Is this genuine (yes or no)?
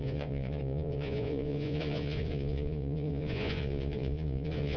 no